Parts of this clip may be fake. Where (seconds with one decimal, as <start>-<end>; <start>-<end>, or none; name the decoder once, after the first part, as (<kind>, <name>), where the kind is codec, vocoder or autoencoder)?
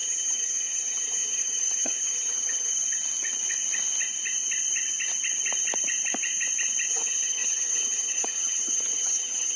0.0-2.7 (vocoder, HiFi-GAN); 6.9-9.6